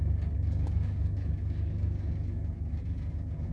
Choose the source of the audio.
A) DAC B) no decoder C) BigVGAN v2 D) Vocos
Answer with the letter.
A